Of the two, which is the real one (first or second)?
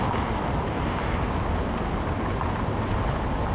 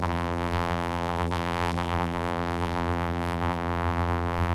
first